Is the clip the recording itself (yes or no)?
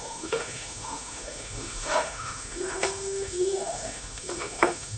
no